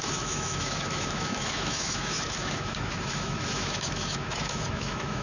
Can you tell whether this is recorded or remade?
remade